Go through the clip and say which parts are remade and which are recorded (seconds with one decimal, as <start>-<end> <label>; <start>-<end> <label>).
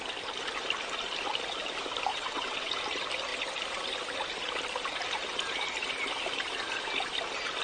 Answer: 0.0-2.1 recorded; 2.1-2.7 remade; 2.7-7.6 recorded